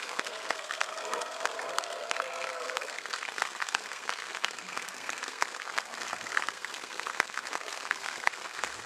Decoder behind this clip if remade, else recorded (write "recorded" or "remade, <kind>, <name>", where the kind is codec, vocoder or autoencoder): remade, codec, SNAC